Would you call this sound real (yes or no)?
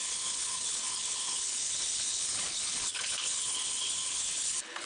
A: no